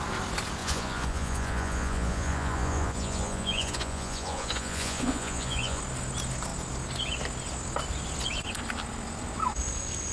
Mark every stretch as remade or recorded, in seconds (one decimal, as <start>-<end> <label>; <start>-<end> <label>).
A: 0.0-0.6 recorded; 0.6-5.8 remade; 5.8-10.1 recorded